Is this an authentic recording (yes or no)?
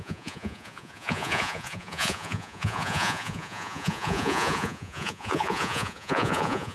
no